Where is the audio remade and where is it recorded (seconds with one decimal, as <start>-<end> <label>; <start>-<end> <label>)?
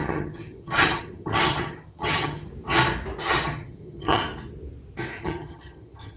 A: 0.0-2.5 remade; 2.5-3.2 recorded; 3.2-4.2 remade; 4.2-5.2 recorded; 5.2-6.2 remade